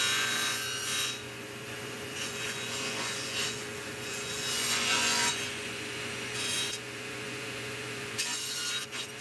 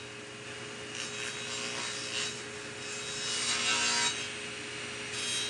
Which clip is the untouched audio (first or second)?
second